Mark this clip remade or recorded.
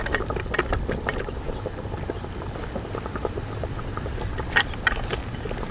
recorded